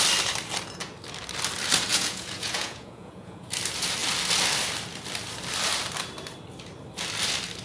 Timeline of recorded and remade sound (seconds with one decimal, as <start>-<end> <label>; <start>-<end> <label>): 0.0-1.9 recorded; 1.9-3.5 remade; 3.5-7.6 recorded